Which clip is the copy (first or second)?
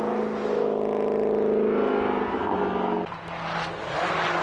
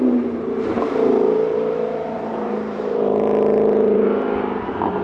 second